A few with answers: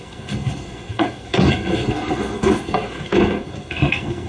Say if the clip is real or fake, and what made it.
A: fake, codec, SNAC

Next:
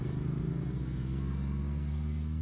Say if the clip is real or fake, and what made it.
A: fake, codec, SNAC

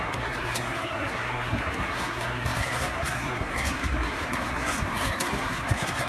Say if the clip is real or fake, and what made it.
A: fake, codec, SNAC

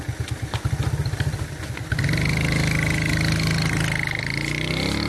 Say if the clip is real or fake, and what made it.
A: real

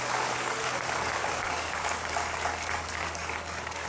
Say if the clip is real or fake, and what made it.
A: fake, codec, DAC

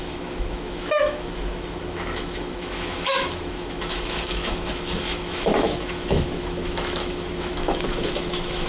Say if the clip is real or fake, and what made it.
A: fake, autoencoder, DAC-VAE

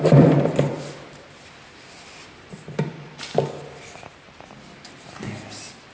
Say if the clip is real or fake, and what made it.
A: real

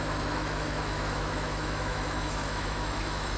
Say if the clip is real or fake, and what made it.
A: fake, autoencoder, DAC-VAE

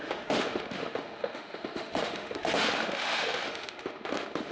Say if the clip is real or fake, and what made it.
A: fake, autoencoder, DAC-VAE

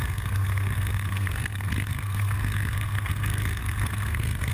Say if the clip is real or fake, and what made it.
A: fake, codec, SNAC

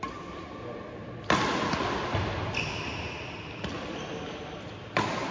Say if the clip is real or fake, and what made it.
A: real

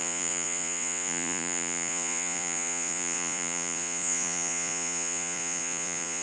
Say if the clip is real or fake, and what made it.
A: fake, vocoder, Vocos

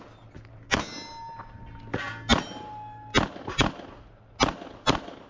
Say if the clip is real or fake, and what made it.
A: real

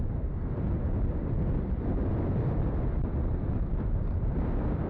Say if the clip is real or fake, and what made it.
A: real